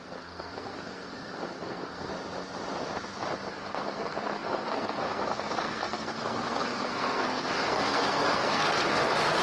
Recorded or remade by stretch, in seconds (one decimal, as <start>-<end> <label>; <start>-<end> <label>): 0.0-2.1 remade; 2.1-3.5 recorded; 3.5-9.4 remade